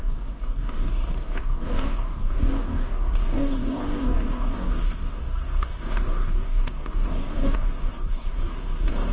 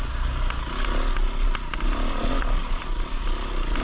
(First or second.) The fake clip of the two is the first